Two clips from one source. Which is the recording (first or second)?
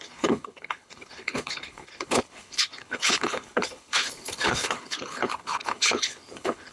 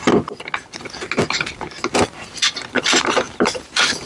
second